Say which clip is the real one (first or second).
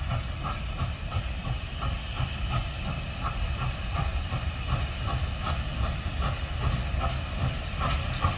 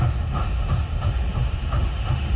first